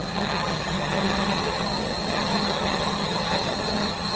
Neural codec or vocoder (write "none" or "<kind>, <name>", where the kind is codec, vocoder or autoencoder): vocoder, HiFi-GAN